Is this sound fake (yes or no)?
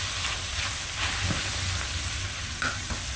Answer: no